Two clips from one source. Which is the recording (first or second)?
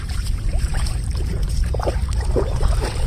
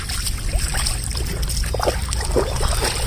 second